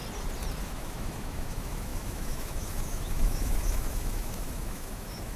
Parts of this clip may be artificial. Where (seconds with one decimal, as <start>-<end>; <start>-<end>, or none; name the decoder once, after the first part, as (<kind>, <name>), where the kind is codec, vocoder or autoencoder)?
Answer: 0.6-5.4 (autoencoder, DAC-VAE)